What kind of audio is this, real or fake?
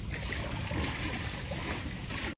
real